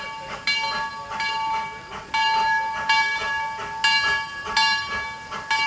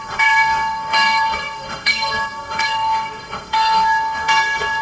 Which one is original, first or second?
first